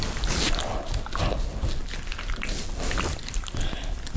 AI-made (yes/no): no